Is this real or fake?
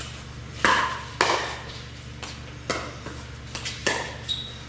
real